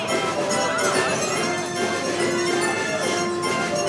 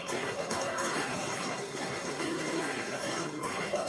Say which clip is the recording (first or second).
first